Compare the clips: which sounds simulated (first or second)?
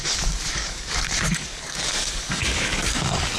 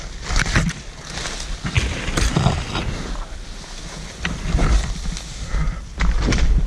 first